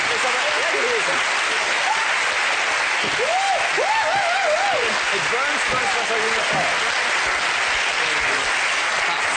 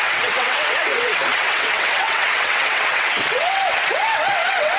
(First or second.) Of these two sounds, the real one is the first